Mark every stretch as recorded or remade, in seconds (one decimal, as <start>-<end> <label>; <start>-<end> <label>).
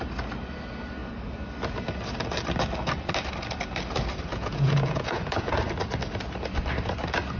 0.0-4.3 recorded; 4.3-5.5 remade; 5.5-7.4 recorded